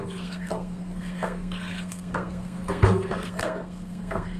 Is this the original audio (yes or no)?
no